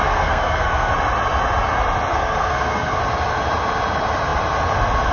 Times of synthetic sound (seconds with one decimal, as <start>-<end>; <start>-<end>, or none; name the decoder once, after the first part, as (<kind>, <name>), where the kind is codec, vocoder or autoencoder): 0.0-0.9 (codec, SNAC); 2.1-3.0